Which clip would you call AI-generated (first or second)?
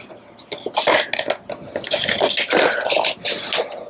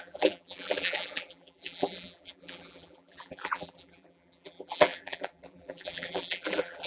second